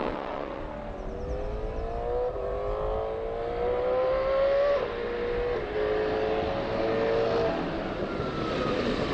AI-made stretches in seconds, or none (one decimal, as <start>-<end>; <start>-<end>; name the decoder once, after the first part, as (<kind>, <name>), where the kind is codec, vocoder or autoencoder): 0.0-0.6 (vocoder, WaveNeXt)